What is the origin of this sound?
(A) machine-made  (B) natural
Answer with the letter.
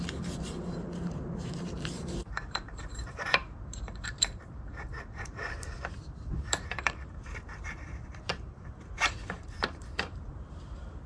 A